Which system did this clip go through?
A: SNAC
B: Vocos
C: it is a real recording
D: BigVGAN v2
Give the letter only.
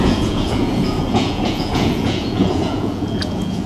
B